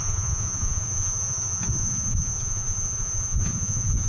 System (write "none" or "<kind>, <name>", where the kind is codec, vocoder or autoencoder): vocoder, Vocos